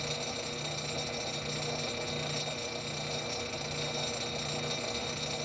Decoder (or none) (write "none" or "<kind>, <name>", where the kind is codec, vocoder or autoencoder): none